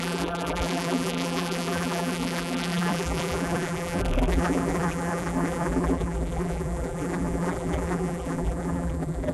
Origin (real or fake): fake